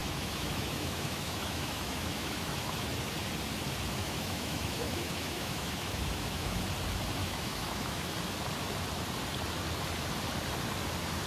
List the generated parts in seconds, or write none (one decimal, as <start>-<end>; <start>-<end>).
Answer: 0.0-2.9; 4.0-6.6; 7.2-8.1